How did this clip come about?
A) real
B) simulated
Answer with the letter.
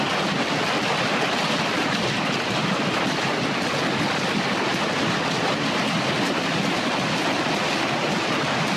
A